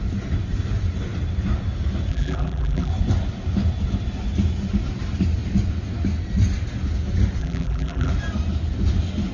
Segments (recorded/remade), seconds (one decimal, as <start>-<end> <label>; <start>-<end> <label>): 0.0-2.1 recorded; 2.1-2.9 remade; 2.9-7.4 recorded; 7.4-8.1 remade; 8.1-9.3 recorded